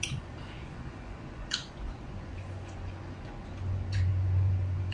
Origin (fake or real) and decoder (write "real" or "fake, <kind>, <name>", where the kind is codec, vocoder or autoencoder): fake, vocoder, Vocos